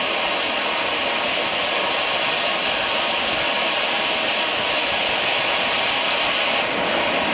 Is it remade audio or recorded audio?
recorded